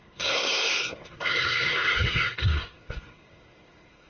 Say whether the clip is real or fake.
fake